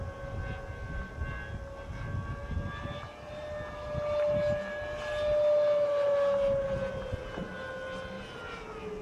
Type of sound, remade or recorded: recorded